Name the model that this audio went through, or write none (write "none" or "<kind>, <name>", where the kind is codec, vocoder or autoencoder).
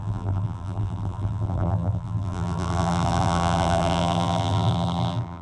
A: vocoder, BigVGAN v2